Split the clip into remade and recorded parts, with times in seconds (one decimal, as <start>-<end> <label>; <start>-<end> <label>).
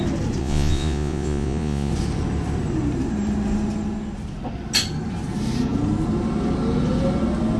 0.0-0.4 recorded; 0.4-1.9 remade; 1.9-7.6 recorded